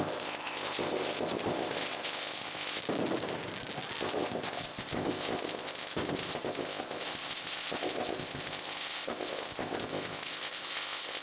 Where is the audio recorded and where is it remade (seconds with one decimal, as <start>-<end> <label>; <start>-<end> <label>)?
0.0-2.8 remade; 2.8-4.0 recorded; 4.0-11.2 remade